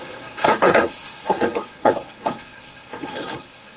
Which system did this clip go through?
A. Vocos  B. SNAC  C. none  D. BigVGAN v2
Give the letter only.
B